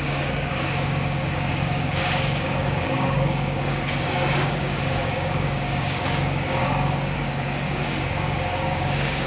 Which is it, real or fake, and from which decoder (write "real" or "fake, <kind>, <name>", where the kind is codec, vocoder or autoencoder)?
fake, codec, DAC